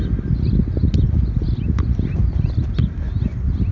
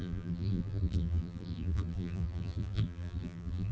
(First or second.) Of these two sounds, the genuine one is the first